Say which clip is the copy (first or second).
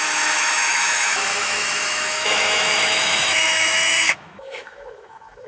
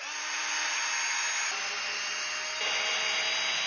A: first